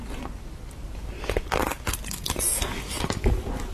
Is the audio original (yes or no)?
yes